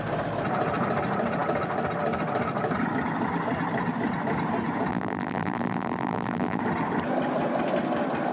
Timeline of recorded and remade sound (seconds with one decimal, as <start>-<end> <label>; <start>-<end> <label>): 0.0-4.9 recorded; 4.9-6.6 remade; 6.6-8.3 recorded